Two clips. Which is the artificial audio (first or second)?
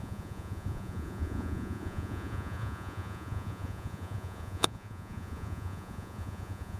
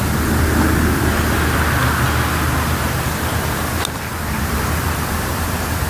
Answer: first